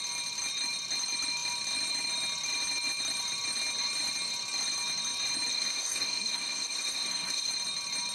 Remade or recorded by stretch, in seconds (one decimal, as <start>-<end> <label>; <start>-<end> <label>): 0.0-5.5 recorded; 5.5-7.5 remade; 7.5-8.1 recorded